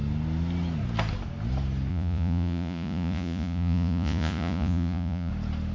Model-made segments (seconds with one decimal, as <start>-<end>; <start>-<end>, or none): 1.9-5.3

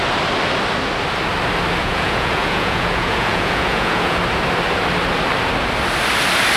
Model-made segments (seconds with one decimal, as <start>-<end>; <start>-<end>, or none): 1.8-4.2